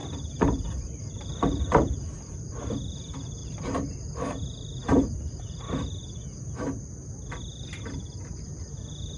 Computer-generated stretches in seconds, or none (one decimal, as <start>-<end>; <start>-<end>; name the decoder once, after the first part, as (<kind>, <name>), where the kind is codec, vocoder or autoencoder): 0.0-2.5 (vocoder, BigVGAN v2); 3.4-5.4